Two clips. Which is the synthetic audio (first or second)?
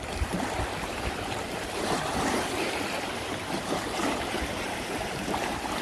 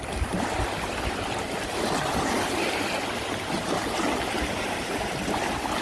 first